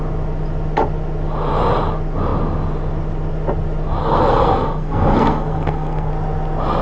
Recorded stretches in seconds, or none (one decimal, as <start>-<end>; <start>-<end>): 0.0-4.0; 6.1-6.8